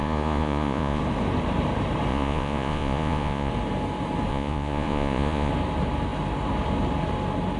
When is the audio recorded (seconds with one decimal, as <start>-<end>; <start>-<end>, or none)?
1.0-2.1; 3.5-4.3; 5.5-7.6